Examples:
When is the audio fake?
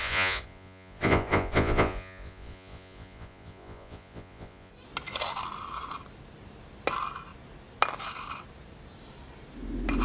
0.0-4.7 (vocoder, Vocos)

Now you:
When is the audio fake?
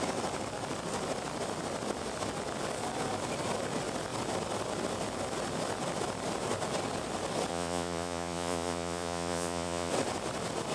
7.5-9.9 (vocoder, Vocos)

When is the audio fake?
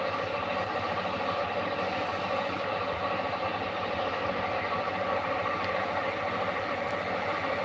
2.1-2.8 (vocoder, Vocos)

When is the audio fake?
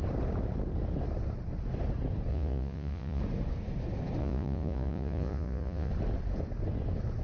2.3-3.2 (vocoder, Vocos); 4.2-5.9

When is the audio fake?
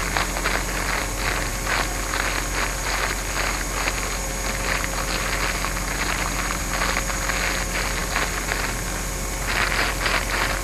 none